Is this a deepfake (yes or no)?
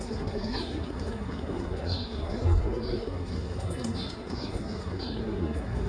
yes